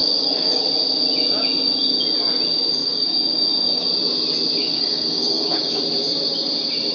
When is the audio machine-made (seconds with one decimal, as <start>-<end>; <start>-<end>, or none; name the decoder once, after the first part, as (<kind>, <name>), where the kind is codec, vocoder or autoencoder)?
0.0-0.6 (codec, DAC); 2.8-3.9; 4.6-5.8